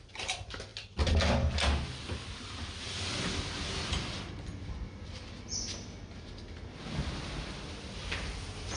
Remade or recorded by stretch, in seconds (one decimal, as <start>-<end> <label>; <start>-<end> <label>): 0.0-8.8 recorded